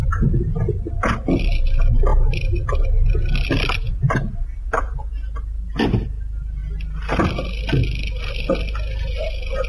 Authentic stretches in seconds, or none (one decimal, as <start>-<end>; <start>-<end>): 0.0-9.7